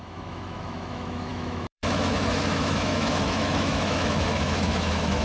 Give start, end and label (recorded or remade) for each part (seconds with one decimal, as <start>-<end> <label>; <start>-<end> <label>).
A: 0.0-5.2 remade